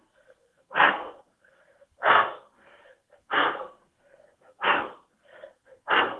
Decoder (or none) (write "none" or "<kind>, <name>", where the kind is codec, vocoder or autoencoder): codec, SNAC